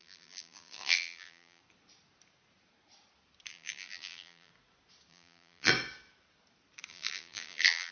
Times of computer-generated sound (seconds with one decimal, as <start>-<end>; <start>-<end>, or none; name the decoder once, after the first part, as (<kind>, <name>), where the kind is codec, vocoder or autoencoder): 0.0-1.6 (vocoder, BigVGAN v2); 3.5-4.5; 5.1-5.7; 6.9-7.9